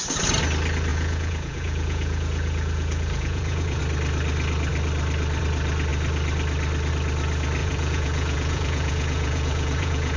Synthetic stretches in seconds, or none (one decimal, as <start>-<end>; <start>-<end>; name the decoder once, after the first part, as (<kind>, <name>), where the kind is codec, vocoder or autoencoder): 0.9-3.8 (vocoder, Vocos); 7.6-10.2